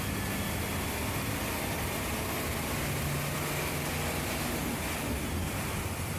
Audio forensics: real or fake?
real